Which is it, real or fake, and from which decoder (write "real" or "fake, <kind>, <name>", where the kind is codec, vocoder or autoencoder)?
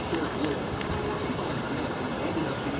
real